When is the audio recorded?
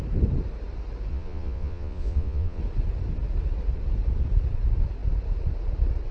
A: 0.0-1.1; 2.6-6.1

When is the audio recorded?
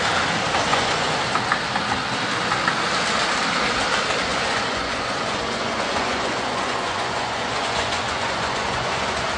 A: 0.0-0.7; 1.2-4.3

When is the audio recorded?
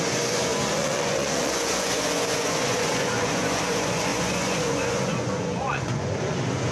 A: none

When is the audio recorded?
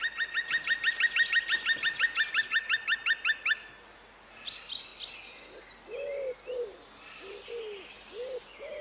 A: 0.0-8.8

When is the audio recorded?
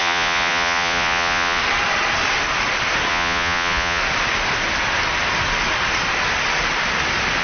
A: 1.6-3.1; 4.0-7.4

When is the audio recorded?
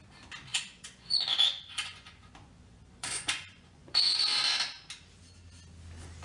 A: 0.0-0.5; 4.2-6.2